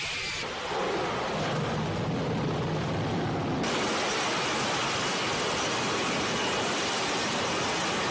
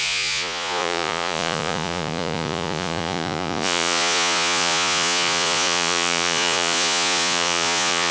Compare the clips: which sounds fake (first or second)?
second